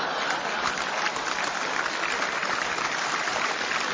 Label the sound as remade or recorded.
recorded